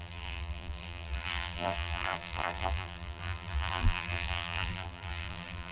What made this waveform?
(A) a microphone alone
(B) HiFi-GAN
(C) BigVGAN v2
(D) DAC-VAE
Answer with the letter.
C